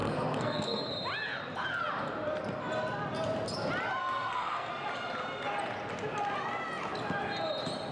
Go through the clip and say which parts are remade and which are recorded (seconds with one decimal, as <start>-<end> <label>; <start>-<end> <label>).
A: 0.0-0.9 remade; 0.9-4.0 recorded; 4.0-4.7 remade; 4.7-7.9 recorded